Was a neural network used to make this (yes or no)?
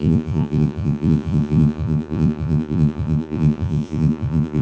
yes